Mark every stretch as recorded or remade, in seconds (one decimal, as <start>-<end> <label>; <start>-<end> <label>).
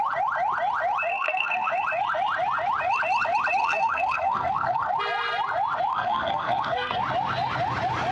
0.0-1.1 recorded; 1.1-1.7 remade; 1.7-3.6 recorded; 3.6-4.9 remade; 4.9-5.9 recorded; 5.9-7.0 remade; 7.0-8.1 recorded